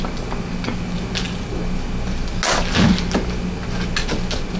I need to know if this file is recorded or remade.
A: recorded